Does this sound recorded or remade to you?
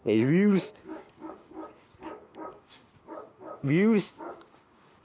remade